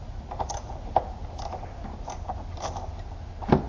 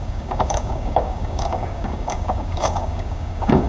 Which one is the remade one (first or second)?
second